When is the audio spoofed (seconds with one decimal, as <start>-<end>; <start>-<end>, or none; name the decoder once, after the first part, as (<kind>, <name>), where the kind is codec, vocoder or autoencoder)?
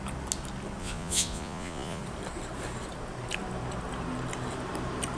0.8-2.0 (vocoder, Vocos)